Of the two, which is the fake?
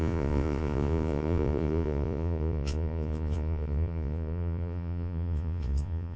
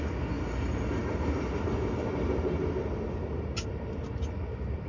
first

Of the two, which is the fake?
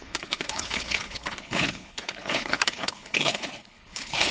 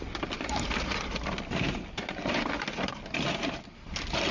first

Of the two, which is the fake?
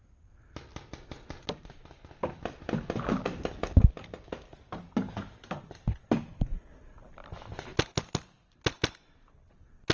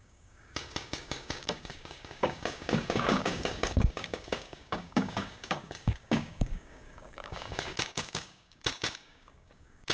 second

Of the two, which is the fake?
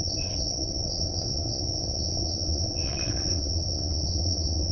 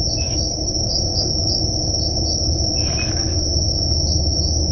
first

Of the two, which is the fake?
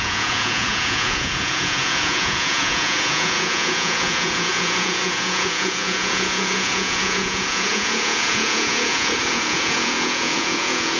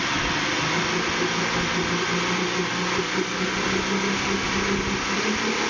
first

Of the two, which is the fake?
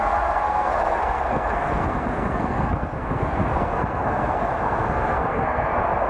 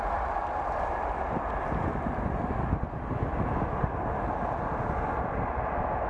first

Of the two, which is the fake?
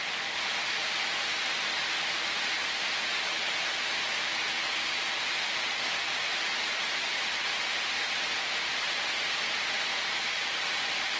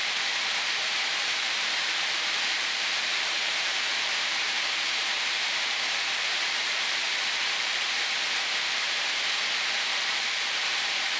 second